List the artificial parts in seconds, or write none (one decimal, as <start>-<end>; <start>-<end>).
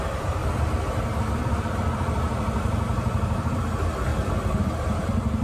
0.0-0.4; 1.4-4.1; 4.6-5.4